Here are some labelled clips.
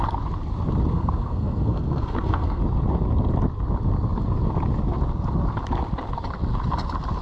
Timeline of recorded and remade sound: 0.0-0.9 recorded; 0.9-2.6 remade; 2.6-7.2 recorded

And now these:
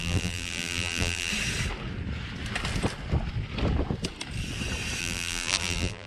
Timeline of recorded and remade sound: 0.0-1.3 remade; 1.3-5.0 recorded; 5.0-6.1 remade